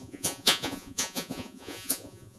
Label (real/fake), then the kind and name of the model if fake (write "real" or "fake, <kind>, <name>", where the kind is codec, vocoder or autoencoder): fake, vocoder, Vocos